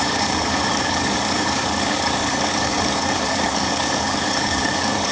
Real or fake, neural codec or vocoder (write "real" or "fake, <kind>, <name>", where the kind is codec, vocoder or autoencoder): fake, codec, DAC